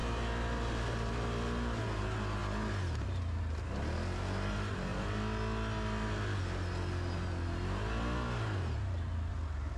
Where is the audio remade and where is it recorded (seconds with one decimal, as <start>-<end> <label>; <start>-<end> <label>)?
0.0-9.8 recorded